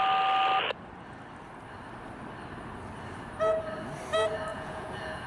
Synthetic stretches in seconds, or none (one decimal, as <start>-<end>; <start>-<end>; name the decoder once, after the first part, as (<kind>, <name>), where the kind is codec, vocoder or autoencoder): 4.5-5.3 (vocoder, Vocos)